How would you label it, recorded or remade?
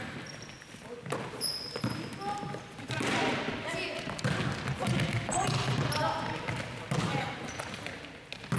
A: recorded